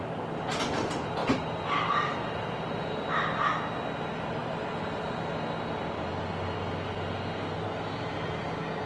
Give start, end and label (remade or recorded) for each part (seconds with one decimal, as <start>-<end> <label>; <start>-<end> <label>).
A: 0.0-8.9 recorded